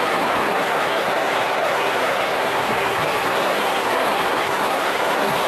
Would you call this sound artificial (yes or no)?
yes